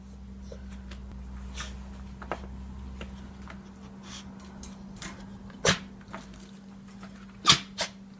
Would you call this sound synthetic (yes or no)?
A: no